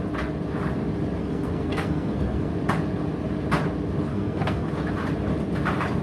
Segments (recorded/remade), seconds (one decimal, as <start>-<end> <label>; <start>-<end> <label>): 0.0-1.2 recorded; 1.2-2.5 remade; 2.5-4.1 recorded; 4.1-4.7 remade; 4.7-6.0 recorded

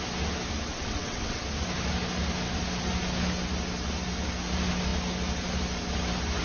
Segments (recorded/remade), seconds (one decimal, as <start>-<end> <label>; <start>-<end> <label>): 0.0-0.7 recorded; 0.7-1.4 remade; 1.4-6.4 recorded

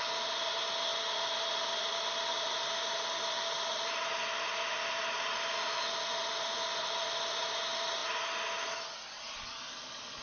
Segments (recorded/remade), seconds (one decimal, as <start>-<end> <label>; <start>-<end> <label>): 0.0-10.2 recorded

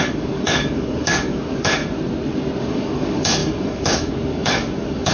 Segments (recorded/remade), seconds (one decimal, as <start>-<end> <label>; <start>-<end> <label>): 0.0-1.8 remade; 1.8-2.6 recorded; 2.6-5.1 remade

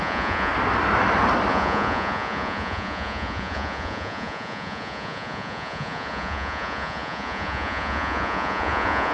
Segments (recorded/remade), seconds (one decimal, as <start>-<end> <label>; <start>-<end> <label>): 0.0-0.5 remade; 0.5-1.5 recorded; 1.5-9.1 remade

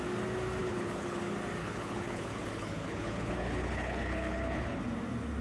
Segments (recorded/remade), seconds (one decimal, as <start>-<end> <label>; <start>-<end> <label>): 0.0-0.6 recorded; 0.6-1.2 remade; 1.2-1.6 recorded; 1.6-4.8 remade; 4.8-5.4 recorded

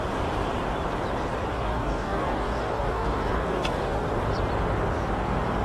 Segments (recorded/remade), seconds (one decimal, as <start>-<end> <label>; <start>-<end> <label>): 0.0-1.5 recorded; 1.5-4.1 remade; 4.1-5.6 recorded

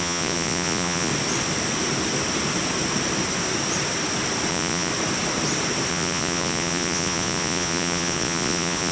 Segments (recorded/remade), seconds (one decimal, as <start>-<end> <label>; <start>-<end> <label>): 0.0-1.1 remade; 1.1-4.5 recorded; 4.5-4.9 remade; 4.9-5.9 recorded; 5.9-8.9 remade